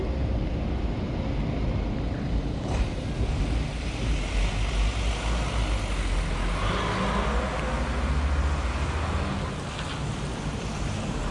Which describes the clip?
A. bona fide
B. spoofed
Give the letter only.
A